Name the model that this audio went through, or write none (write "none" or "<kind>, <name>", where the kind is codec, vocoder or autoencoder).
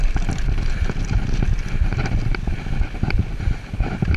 none